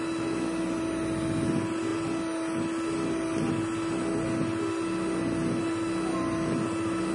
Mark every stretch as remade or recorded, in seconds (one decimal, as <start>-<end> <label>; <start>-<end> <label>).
0.0-7.1 recorded